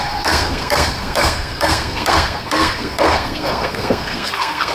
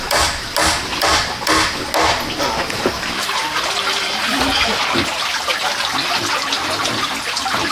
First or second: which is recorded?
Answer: second